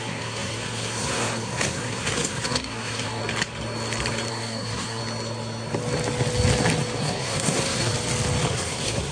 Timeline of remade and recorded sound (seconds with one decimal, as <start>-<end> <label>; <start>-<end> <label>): 0.0-3.2 remade; 3.2-4.3 recorded; 4.3-5.0 remade; 5.0-7.0 recorded; 7.0-7.9 remade; 7.9-8.5 recorded; 8.5-9.1 remade

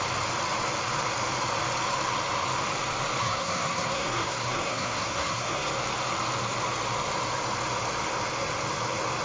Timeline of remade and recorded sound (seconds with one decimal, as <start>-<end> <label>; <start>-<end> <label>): 0.0-3.2 recorded; 3.2-5.7 remade; 5.7-9.2 recorded